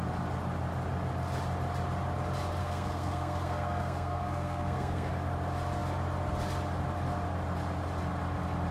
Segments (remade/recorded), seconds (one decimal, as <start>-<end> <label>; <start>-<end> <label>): 0.0-2.6 recorded; 2.6-5.1 remade; 5.1-8.7 recorded